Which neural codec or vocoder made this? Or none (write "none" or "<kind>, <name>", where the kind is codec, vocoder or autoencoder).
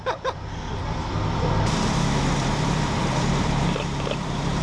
vocoder, BigVGAN v2